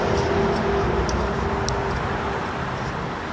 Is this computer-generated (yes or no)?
no